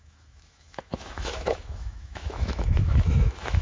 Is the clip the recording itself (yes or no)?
no